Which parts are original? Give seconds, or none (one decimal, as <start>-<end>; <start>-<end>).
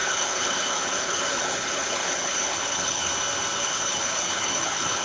3.1-3.6